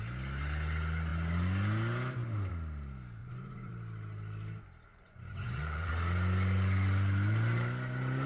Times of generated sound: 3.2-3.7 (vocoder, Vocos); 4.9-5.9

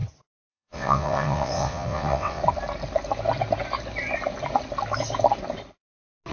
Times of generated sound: 0.5-2.4 (vocoder, WaveNeXt)

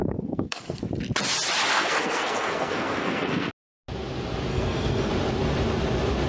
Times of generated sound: 0.0-0.9 (codec, SNAC); 1.7-3.5; 4.5-5.1

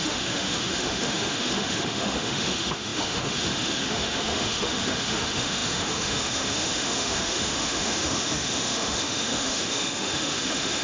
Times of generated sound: 0.0-10.8 (autoencoder, DAC-VAE)

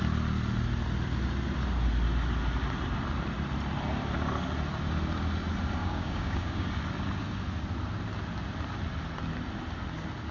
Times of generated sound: 5.8-6.7 (codec, DAC)

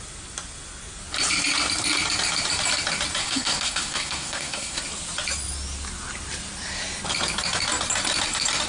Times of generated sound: 3.2-4.8 (codec, SNAC)

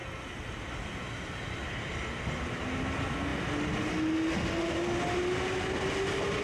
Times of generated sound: 1.6-2.1 (vocoder, BigVGAN v2)

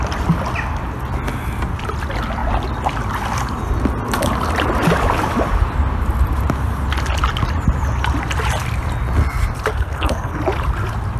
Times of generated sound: 9.7-10.4 (codec, SNAC)